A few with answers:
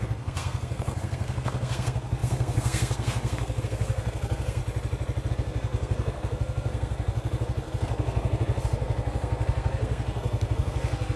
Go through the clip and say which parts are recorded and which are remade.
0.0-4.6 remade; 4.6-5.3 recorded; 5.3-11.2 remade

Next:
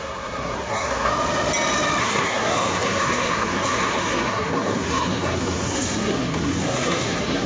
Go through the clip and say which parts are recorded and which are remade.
0.0-1.1 remade; 1.1-2.0 recorded; 2.0-7.5 remade

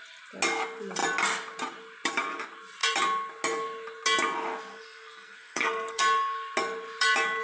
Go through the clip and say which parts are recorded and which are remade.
0.0-4.7 recorded; 4.7-6.0 remade; 6.0-7.4 recorded